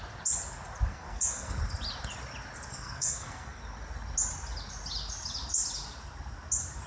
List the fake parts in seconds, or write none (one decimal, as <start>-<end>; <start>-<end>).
0.9-1.6; 2.7-3.6